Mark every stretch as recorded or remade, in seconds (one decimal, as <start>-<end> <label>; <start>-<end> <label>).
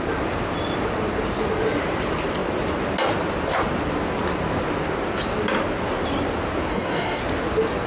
0.0-6.7 recorded; 6.7-7.2 remade; 7.2-7.9 recorded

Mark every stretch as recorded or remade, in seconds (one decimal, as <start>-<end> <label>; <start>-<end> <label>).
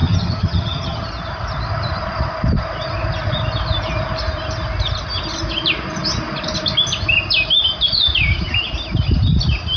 0.0-1.1 remade; 1.1-9.8 recorded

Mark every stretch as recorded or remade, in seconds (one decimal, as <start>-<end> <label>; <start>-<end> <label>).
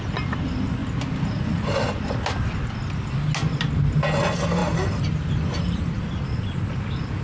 0.0-4.6 recorded; 4.6-6.0 remade; 6.0-7.2 recorded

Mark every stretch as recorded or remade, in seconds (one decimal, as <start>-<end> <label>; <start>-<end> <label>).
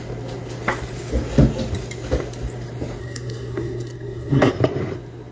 0.0-3.0 recorded; 3.0-4.5 remade; 4.5-5.3 recorded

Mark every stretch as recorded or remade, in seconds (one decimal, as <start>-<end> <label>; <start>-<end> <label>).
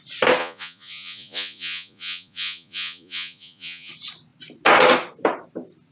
0.0-0.4 recorded; 0.4-3.9 remade; 3.9-5.9 recorded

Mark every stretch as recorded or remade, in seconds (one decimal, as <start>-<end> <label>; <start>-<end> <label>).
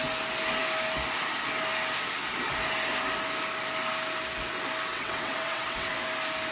0.0-4.9 recorded; 4.9-5.9 remade; 5.9-6.5 recorded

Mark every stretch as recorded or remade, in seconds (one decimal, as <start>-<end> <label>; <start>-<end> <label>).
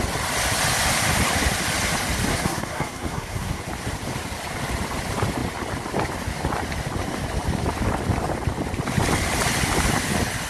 0.0-2.3 recorded; 2.3-3.6 remade; 3.6-10.5 recorded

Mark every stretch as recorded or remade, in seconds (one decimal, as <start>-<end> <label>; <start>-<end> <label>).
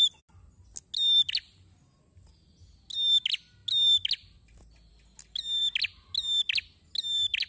0.0-7.5 recorded